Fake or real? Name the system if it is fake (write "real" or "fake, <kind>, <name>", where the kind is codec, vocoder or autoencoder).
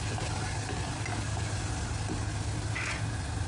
real